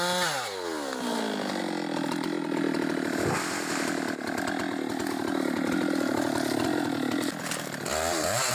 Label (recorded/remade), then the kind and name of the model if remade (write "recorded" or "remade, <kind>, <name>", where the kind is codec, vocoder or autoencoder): recorded